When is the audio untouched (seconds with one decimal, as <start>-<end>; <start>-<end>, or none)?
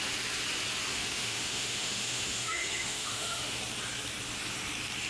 0.0-0.9; 3.6-5.1